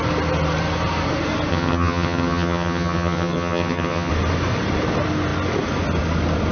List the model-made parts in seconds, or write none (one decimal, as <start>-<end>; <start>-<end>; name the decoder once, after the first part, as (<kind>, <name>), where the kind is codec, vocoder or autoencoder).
1.5-4.1 (vocoder, HiFi-GAN)